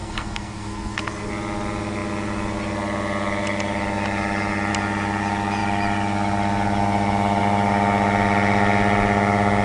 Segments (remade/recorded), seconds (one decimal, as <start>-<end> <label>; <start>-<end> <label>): 0.0-1.3 remade; 1.3-9.6 recorded